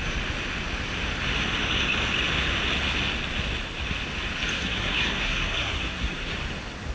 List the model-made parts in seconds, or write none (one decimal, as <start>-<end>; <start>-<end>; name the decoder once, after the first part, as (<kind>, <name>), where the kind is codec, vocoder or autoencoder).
4.5-6.3 (codec, SNAC)